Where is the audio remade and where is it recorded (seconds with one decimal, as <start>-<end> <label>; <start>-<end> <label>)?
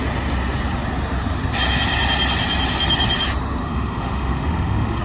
0.0-3.6 recorded; 3.6-5.0 remade